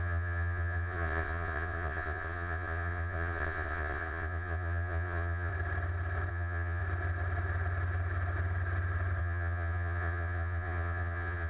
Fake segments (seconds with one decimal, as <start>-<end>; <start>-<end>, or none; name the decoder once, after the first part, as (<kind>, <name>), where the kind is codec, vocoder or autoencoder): 0.0-5.5 (vocoder, Vocos); 6.3-6.8; 9.2-11.5